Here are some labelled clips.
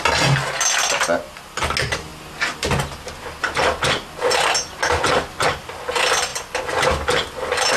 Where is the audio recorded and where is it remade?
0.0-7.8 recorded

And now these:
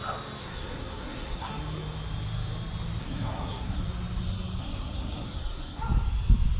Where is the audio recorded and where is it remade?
0.0-0.4 recorded; 0.4-1.5 remade; 1.5-3.0 recorded; 3.0-3.8 remade; 3.8-4.6 recorded; 4.6-5.8 remade; 5.8-6.6 recorded

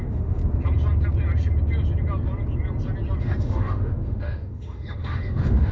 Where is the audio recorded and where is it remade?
0.0-0.4 remade; 0.4-3.2 recorded; 3.2-5.7 remade

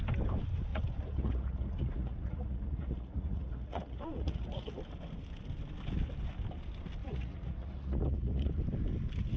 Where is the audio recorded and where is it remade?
0.0-0.7 recorded; 0.7-4.8 remade; 4.8-7.0 recorded; 7.0-8.6 remade; 8.6-9.4 recorded

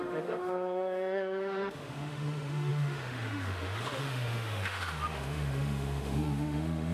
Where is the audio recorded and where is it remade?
0.0-6.9 remade

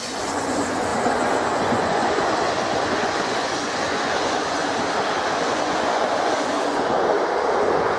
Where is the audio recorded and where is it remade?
0.0-4.6 remade; 4.6-5.4 recorded; 5.4-7.1 remade; 7.1-7.6 recorded; 7.6-8.0 remade

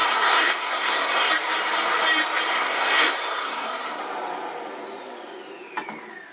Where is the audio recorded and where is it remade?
0.0-1.3 remade; 1.3-2.5 recorded; 2.5-4.0 remade; 4.0-6.3 recorded

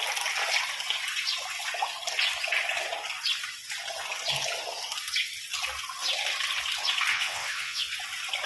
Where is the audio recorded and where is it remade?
0.0-7.1 recorded; 7.1-7.9 remade; 7.9-8.5 recorded